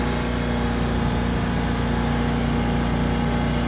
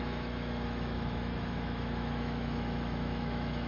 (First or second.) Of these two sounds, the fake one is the second